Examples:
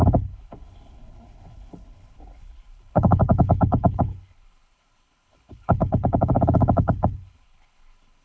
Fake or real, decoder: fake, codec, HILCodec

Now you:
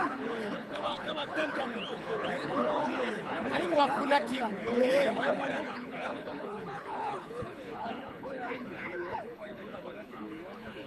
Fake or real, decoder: fake, codec, HILCodec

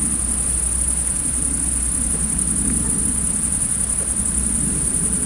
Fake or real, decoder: real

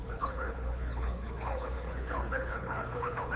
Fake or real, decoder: fake, codec, HILCodec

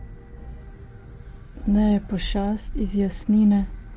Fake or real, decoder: real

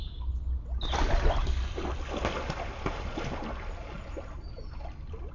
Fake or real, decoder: real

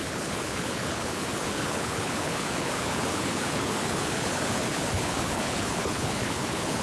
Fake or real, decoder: fake, codec, HILCodec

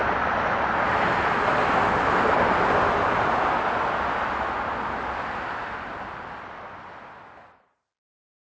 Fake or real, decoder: real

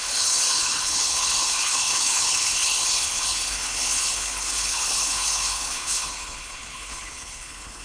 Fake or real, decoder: fake, codec, HILCodec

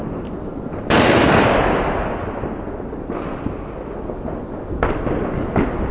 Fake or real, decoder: real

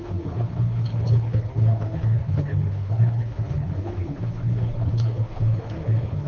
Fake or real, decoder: fake, codec, HILCodec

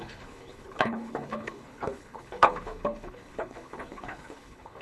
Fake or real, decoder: fake, codec, HILCodec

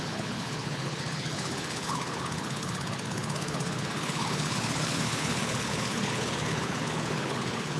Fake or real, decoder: fake, codec, HILCodec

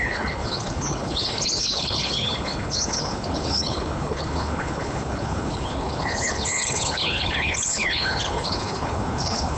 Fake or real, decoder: fake, codec, HILCodec